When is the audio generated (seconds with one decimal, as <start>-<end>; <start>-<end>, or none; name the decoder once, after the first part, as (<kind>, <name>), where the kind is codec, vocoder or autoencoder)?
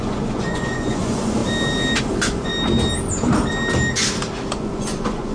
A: 0.0-1.4 (vocoder, Vocos); 2.0-2.5; 4.5-5.3